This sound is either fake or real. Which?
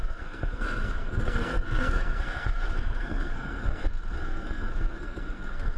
fake